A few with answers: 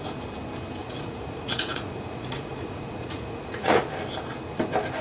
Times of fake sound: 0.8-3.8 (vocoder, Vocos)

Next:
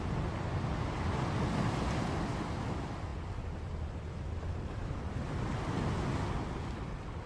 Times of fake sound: none

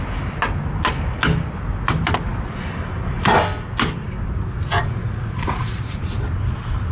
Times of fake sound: 5.0-6.0 (vocoder, Vocos)